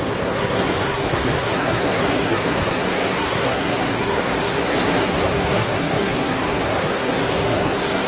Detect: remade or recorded remade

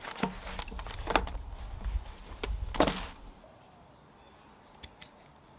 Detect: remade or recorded recorded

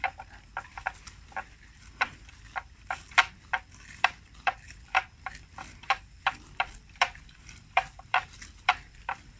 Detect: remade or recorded remade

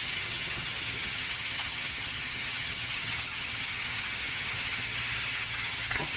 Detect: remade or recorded remade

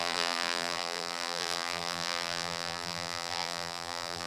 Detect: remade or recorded remade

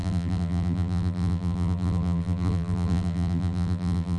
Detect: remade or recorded remade